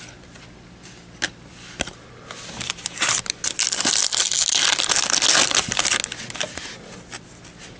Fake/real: real